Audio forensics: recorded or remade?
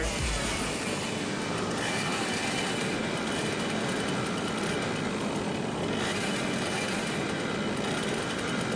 remade